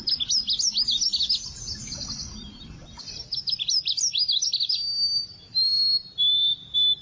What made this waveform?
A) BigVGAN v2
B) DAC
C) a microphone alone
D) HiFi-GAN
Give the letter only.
C